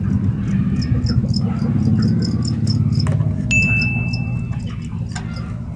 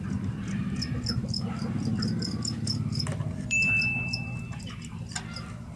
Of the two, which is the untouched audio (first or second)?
first